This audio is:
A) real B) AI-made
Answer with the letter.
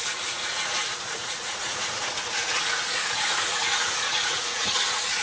B